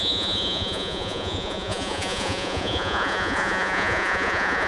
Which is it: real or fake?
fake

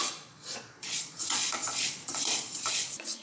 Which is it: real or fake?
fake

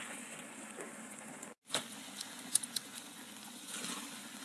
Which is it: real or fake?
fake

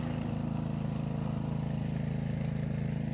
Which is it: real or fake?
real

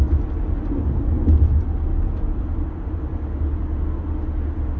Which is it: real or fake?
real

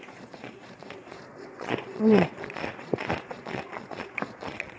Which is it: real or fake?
fake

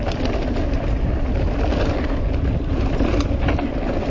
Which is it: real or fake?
real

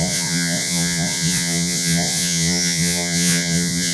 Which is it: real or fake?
fake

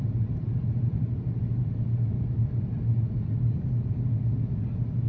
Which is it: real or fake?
real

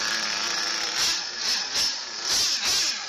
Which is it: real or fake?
real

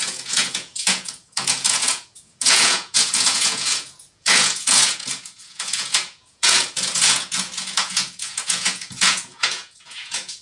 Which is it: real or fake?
fake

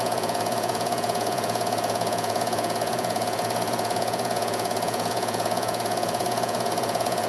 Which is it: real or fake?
fake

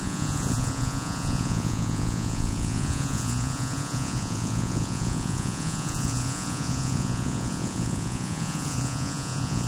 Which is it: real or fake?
fake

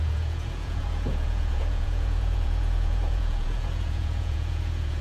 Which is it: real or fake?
fake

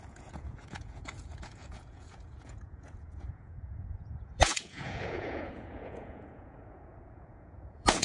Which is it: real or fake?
fake